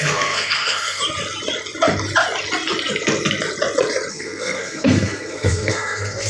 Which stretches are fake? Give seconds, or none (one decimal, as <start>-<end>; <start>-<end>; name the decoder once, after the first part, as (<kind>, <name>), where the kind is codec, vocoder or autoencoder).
0.0-1.0 (codec, SNAC); 4.1-6.3